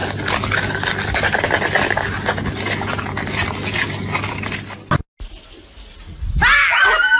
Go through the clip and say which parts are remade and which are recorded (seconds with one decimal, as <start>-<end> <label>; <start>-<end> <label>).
0.0-7.2 recorded